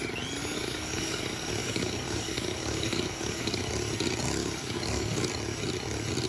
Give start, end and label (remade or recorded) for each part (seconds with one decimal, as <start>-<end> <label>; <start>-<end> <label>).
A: 0.0-0.4 recorded; 0.4-1.2 remade; 1.2-1.6 recorded; 1.6-3.7 remade; 3.7-4.4 recorded; 4.4-5.3 remade; 5.3-6.3 recorded